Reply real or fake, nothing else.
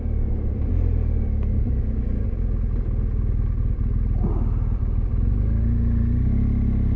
real